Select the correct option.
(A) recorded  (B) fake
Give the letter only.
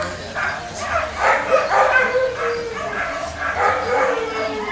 A